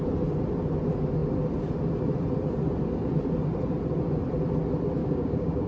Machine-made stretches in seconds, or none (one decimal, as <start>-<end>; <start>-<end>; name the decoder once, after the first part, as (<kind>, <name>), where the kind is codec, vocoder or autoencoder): 5.0-5.7 (codec, DAC)